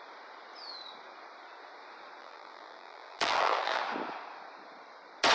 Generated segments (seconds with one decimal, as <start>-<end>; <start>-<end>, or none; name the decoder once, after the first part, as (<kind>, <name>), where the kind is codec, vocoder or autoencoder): 2.2-3.8 (vocoder, BigVGAN v2)

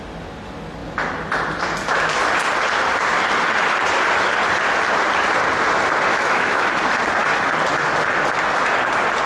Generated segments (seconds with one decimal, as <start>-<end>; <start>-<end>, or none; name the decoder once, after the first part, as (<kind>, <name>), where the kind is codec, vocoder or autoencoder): 6.1-6.7 (autoencoder, DAC-VAE)

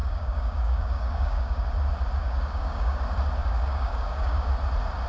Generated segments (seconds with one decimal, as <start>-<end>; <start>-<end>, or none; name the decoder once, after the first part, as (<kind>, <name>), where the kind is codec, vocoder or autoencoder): 0.0-1.7 (codec, DAC); 2.2-3.0; 3.4-4.5

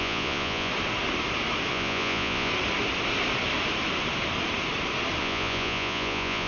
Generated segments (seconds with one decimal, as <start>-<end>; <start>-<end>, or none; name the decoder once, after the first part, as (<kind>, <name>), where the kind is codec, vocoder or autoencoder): 0.0-0.7 (vocoder, Vocos); 1.7-2.5; 5.2-6.5